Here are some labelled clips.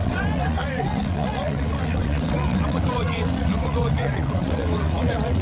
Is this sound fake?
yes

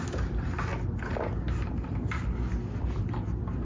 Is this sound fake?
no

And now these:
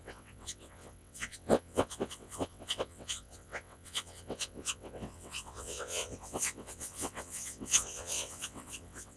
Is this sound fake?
yes